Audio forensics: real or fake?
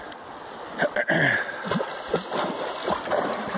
real